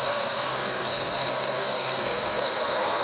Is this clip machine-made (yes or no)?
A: yes